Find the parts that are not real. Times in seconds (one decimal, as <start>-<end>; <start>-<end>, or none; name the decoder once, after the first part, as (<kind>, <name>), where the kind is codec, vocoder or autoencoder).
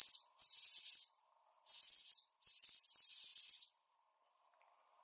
0.0-5.0 (vocoder, BigVGAN v2)